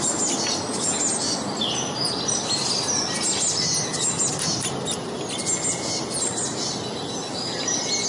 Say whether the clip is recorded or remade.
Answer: recorded